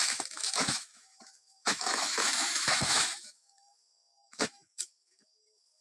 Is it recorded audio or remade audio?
remade